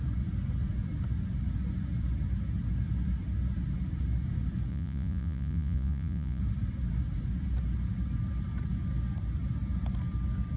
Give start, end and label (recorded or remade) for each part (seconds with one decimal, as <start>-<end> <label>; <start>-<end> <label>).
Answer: 0.0-4.7 recorded; 4.7-6.4 remade; 6.4-10.6 recorded